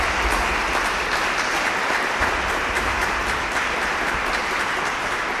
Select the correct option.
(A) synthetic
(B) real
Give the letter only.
B